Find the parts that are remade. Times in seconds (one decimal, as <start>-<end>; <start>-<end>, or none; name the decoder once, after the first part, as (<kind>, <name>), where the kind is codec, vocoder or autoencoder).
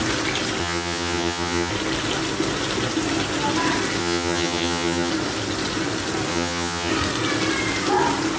0.6-1.7 (vocoder, HiFi-GAN); 4.0-5.1; 6.3-6.9